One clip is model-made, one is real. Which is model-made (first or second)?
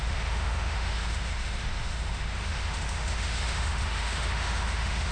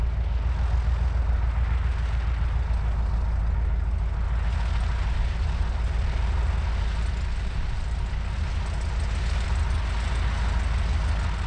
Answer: first